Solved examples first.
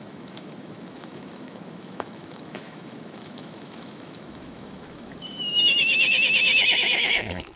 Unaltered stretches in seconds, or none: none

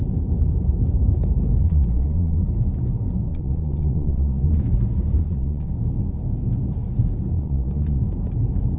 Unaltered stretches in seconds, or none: 0.0-1.6; 2.4-3.3; 4.6-5.2; 5.7-7.3; 8.0-8.8

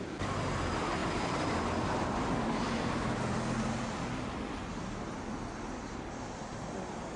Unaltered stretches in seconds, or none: 0.0-7.2

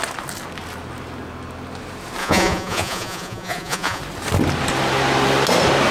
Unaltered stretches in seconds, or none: 0.0-2.2; 4.0-5.9

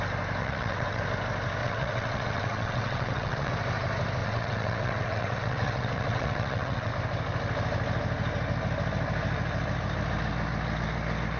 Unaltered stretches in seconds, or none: 0.0-0.4; 1.0-1.6; 3.5-4.2; 6.9-11.4

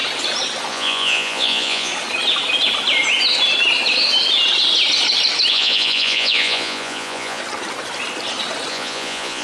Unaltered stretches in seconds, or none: 0.0-0.7; 1.9-5.5; 7.4-8.7

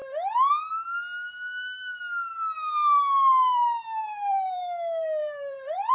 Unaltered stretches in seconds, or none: 0.0-2.3